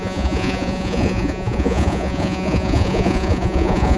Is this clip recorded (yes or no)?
no